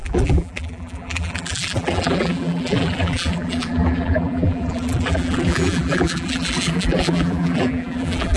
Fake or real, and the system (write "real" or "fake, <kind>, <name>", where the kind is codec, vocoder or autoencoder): fake, vocoder, BigVGAN v2